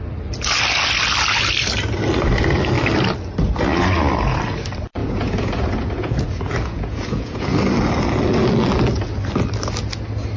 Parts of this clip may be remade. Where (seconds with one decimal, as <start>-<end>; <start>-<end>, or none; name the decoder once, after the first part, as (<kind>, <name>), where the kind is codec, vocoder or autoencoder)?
5.0-7.6 (vocoder, Vocos)